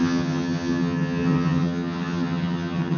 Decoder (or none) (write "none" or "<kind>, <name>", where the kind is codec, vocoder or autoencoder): vocoder, HiFi-GAN